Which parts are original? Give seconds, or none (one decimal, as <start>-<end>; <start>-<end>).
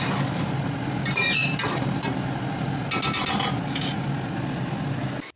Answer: 0.0-5.4